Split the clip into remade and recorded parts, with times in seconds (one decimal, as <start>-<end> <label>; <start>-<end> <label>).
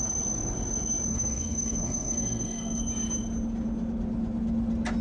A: 0.0-1.1 recorded; 1.1-2.8 remade; 2.8-5.0 recorded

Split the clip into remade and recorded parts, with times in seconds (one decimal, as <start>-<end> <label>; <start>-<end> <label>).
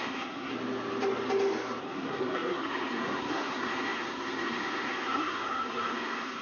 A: 0.0-0.5 remade; 0.5-1.8 recorded; 1.8-6.4 remade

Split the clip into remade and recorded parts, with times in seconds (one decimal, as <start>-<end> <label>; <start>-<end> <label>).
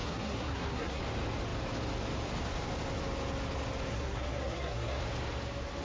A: 0.0-1.0 remade; 1.0-3.9 recorded; 3.9-5.0 remade; 5.0-5.8 recorded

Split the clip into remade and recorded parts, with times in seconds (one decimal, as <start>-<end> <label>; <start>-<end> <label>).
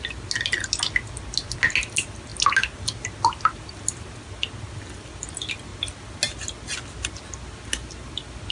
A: 0.0-8.5 recorded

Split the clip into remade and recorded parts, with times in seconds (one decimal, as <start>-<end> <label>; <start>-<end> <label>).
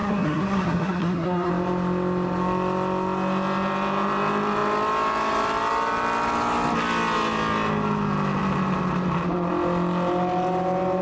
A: 0.0-1.5 remade; 1.5-11.0 recorded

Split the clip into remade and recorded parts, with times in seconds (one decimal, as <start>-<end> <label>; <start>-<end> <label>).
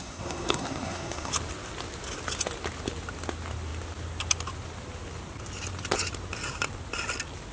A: 0.0-1.3 remade; 1.3-7.5 recorded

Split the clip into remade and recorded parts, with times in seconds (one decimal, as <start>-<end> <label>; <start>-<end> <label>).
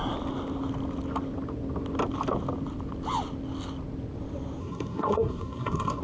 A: 0.0-4.6 recorded; 4.6-6.0 remade